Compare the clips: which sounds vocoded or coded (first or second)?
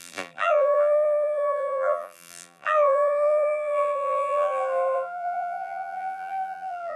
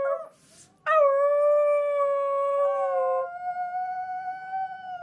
first